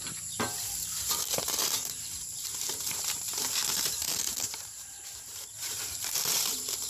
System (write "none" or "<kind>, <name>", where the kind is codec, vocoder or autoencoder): vocoder, BigVGAN v2